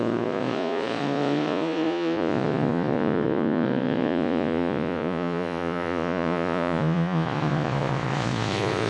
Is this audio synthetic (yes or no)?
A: yes